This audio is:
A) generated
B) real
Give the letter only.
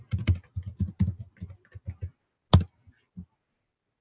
B